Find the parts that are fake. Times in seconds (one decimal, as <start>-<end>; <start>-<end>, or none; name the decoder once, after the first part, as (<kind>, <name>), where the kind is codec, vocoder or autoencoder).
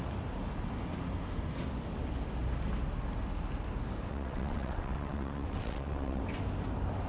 4.1-6.2 (vocoder, WaveNeXt)